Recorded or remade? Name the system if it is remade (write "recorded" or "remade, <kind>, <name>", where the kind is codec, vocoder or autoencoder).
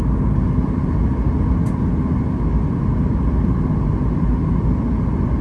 recorded